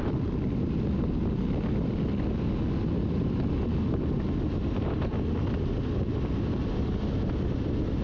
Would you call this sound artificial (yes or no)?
no